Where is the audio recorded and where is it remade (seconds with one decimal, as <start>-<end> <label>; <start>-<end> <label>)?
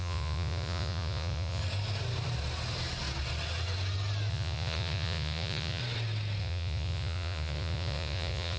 0.0-1.6 remade; 1.6-4.3 recorded; 4.3-5.8 remade; 5.8-6.4 recorded; 6.4-8.6 remade